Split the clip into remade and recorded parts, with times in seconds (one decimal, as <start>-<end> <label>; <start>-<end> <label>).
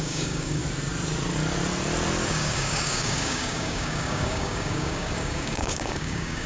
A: 0.0-0.6 remade; 0.6-2.3 recorded; 2.3-6.5 remade